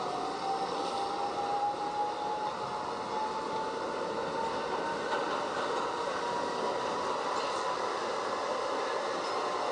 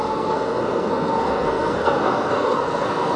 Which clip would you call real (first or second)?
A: first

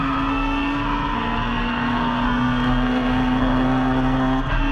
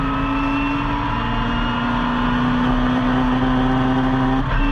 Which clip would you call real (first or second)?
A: second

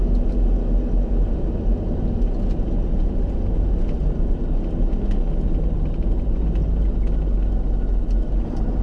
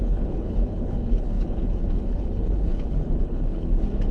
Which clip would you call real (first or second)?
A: first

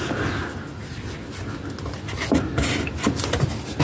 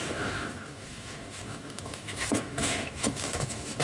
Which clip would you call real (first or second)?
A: first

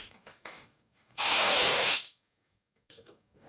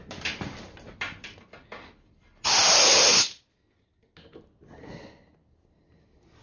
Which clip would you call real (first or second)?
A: second